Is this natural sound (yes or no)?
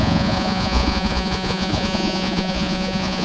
no